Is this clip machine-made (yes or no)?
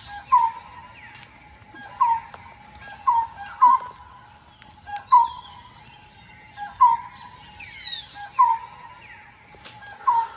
no